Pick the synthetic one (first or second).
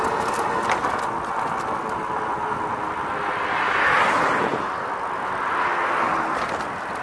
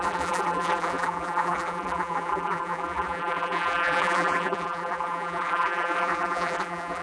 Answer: second